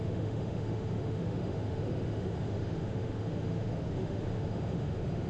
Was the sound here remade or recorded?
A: remade